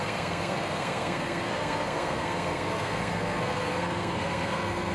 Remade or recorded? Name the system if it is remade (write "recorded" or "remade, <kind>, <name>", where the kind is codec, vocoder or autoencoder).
remade, codec, SNAC